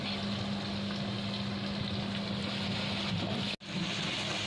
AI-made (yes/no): no